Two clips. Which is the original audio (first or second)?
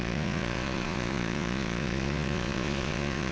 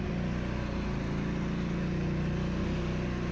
second